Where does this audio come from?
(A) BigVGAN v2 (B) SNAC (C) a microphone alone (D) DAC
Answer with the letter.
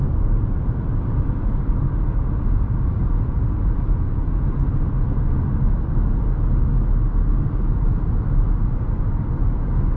C